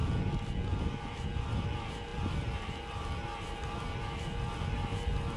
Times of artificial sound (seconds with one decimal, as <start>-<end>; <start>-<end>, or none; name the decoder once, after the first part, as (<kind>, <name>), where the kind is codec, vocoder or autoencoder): none

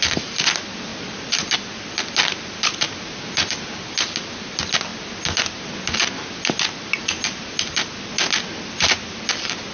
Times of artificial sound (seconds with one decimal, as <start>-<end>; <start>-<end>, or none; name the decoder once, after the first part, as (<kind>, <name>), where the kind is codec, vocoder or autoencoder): none